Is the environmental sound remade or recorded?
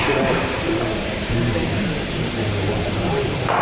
remade